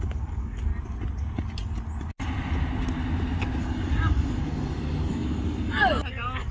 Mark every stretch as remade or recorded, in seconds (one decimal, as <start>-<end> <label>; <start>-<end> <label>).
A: 0.0-0.7 remade; 0.7-3.6 recorded; 3.6-6.5 remade